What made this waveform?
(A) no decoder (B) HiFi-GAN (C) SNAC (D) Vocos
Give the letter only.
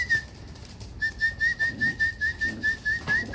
A